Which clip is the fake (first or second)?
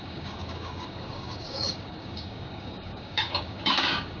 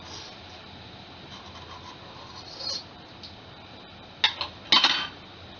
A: first